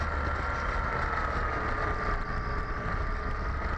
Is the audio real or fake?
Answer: real